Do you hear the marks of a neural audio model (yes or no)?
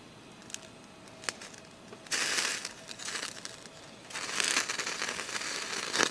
no